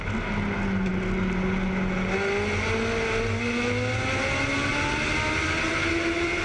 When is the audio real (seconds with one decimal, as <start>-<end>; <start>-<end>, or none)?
0.0-6.4